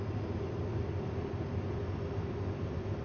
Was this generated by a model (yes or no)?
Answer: no